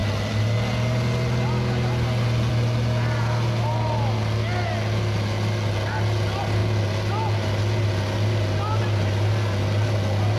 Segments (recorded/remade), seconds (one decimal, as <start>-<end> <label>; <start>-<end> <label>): 0.0-10.4 recorded